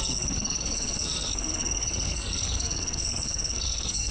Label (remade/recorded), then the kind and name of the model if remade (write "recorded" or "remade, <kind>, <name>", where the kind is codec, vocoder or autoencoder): remade, codec, SNAC